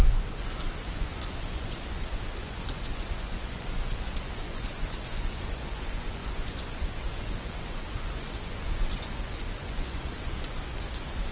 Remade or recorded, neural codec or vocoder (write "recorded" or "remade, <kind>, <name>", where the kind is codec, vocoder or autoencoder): remade, vocoder, Vocos